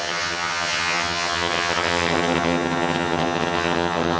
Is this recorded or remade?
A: remade